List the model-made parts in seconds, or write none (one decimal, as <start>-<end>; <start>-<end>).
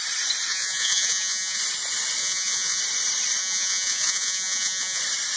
0.5-1.6; 2.2-2.8; 3.4-5.0